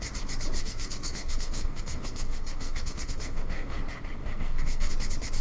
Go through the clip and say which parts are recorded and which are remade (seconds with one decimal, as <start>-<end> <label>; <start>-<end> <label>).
0.0-0.6 recorded; 0.6-3.8 remade; 3.8-4.2 recorded; 4.2-4.9 remade; 4.9-5.4 recorded